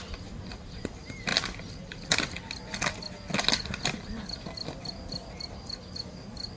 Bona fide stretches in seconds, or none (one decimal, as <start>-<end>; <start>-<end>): 0.0-6.6